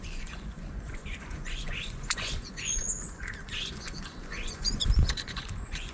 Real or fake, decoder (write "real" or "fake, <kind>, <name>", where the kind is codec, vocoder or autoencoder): fake, vocoder, Vocos